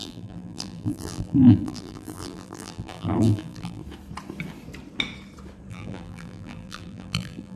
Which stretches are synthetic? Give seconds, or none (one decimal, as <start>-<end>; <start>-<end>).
0.0-3.8; 5.7-7.6